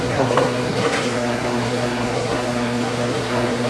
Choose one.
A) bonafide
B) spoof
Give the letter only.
B